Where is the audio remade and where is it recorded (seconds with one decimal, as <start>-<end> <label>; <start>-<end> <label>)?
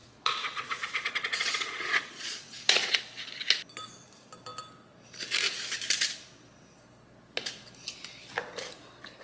0.0-3.0 remade; 3.0-9.2 recorded